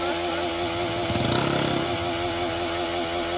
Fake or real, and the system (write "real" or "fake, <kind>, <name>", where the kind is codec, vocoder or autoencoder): real